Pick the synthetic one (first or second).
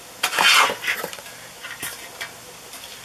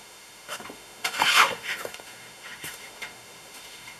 second